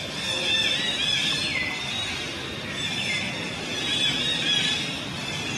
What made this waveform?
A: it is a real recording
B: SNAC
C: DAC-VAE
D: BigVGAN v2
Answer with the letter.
A